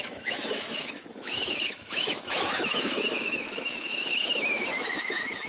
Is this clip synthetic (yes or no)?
yes